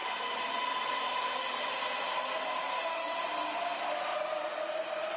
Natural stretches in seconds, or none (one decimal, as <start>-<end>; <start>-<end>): 0.0-2.7; 3.2-5.2